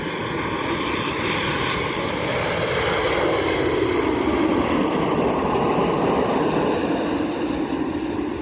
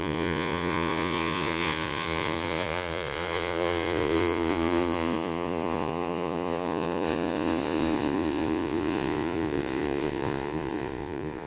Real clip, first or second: first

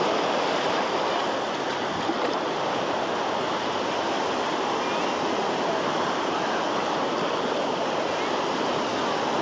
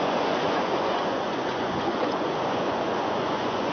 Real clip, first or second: first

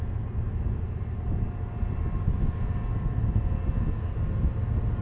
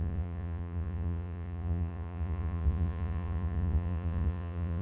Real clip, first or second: first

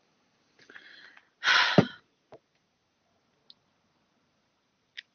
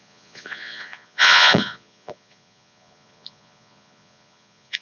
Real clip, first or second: first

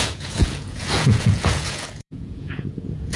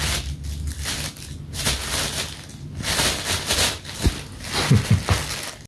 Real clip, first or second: second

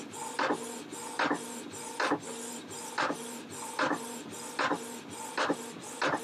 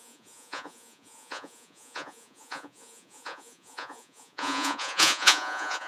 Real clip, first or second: first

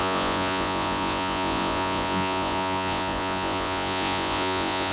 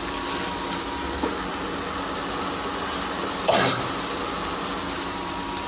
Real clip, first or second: second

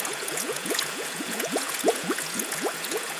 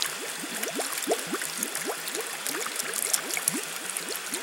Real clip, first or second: second